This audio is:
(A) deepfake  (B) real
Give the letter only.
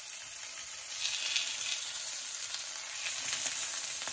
B